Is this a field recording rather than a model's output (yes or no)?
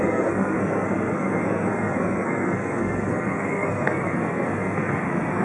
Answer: no